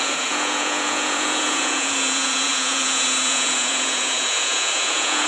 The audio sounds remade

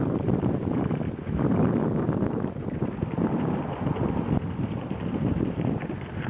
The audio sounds recorded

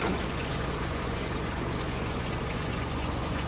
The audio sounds remade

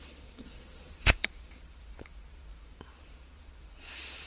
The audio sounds remade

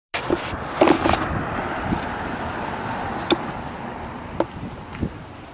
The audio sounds recorded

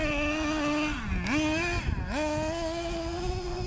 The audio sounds recorded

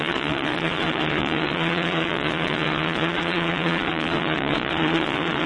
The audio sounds remade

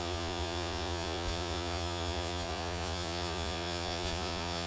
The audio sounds remade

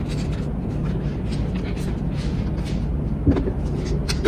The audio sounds recorded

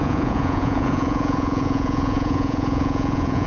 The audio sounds remade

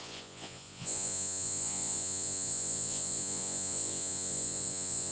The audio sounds remade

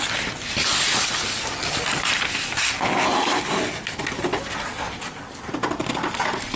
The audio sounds recorded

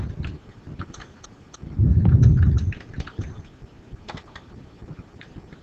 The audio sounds recorded